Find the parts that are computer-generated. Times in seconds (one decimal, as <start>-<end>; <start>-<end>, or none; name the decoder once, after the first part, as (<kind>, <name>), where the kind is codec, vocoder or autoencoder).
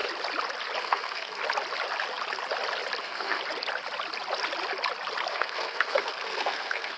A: 0.8-1.4 (codec, SNAC); 3.0-3.4; 5.3-7.0